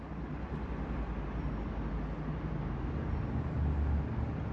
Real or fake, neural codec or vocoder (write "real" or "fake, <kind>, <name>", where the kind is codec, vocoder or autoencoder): real